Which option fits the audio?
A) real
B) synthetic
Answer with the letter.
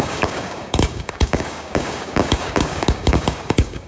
B